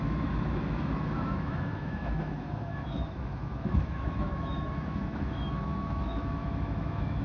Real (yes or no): no